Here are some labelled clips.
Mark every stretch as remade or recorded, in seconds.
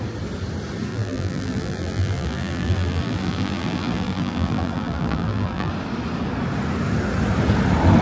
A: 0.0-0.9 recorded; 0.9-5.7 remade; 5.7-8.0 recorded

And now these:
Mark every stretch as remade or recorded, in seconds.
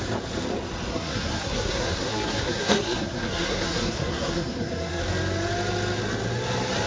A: 0.0-0.9 recorded; 0.9-5.0 remade; 5.0-6.9 recorded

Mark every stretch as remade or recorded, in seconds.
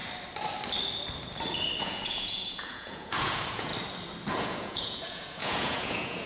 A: 0.0-1.8 recorded; 1.8-3.7 remade; 3.7-4.3 recorded; 4.3-6.3 remade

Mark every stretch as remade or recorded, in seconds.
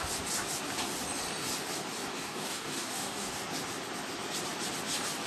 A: 0.0-2.1 recorded; 2.1-3.4 remade; 3.4-5.3 recorded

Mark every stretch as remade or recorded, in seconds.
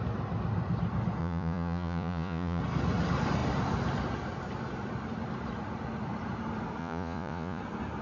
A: 0.0-1.2 recorded; 1.2-2.6 remade; 2.6-6.8 recorded; 6.8-7.6 remade; 7.6-8.0 recorded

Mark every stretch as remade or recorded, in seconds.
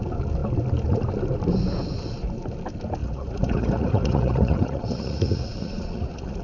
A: 0.0-3.0 recorded; 3.0-6.4 remade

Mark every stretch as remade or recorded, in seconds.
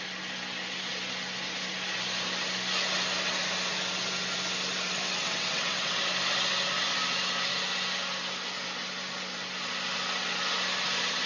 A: 0.0-5.2 recorded; 5.2-6.0 remade; 6.0-11.3 recorded